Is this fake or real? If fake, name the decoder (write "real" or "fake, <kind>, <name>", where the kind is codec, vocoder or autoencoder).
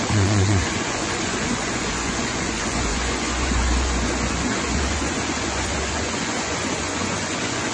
fake, vocoder, Vocos